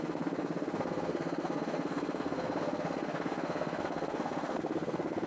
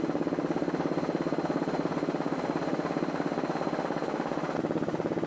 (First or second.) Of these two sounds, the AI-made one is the first